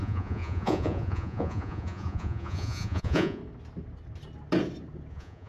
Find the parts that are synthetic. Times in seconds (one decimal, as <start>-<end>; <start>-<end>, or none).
0.0-3.4; 5.1-5.5